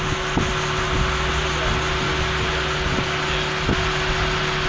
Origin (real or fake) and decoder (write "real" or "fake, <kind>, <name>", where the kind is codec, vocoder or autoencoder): real